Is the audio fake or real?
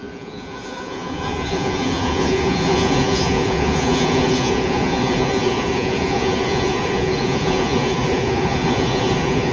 fake